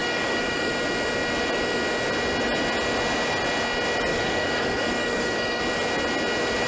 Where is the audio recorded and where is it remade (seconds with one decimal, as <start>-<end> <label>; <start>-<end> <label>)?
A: 0.0-0.7 remade; 0.7-4.1 recorded; 4.1-5.6 remade; 5.6-6.7 recorded